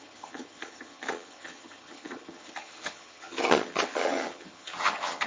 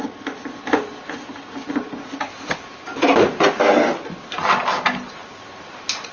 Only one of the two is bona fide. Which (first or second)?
second